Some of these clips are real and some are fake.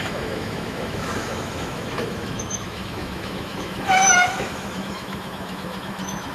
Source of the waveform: fake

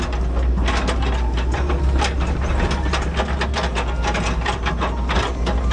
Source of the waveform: real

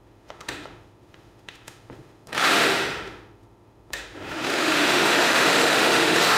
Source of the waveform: fake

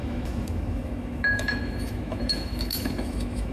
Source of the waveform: fake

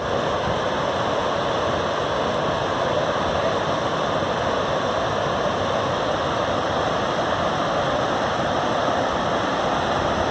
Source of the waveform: real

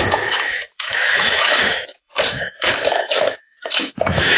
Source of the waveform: fake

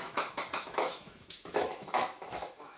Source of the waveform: fake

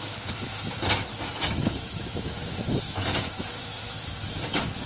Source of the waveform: fake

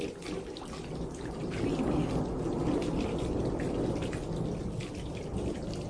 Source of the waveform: real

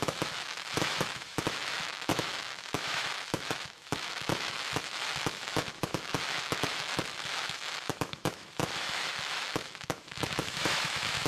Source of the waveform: fake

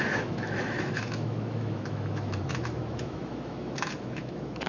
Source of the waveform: fake